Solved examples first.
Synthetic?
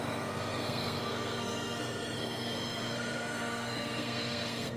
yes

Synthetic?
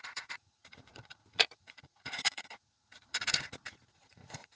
yes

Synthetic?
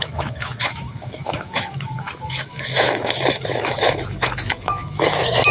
yes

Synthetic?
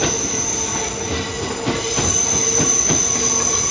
no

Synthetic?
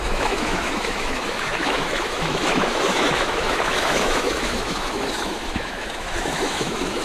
yes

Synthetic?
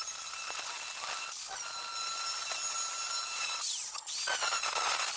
no